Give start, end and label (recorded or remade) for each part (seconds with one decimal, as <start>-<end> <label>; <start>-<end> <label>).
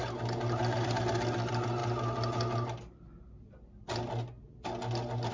0.0-5.3 recorded